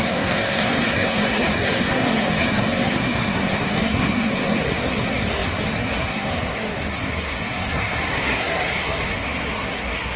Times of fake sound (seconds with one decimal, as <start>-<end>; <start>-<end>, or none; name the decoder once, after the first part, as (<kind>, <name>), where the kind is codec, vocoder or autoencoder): 0.0-10.2 (codec, SNAC)